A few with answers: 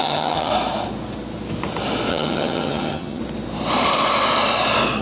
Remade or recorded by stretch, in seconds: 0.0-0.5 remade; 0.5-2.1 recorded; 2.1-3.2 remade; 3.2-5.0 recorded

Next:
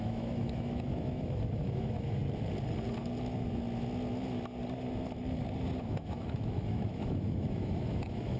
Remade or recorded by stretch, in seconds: 0.0-2.2 remade; 2.2-5.8 recorded; 5.8-8.4 remade

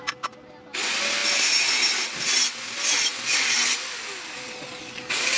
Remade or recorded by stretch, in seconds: 0.0-5.4 recorded